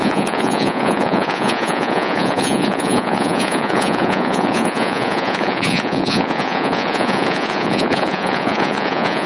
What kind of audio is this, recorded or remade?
remade